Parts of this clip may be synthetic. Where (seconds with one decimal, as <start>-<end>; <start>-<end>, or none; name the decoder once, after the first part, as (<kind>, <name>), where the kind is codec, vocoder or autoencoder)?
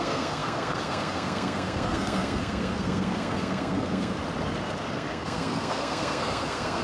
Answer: 0.0-4.2 (codec, SNAC); 4.9-6.8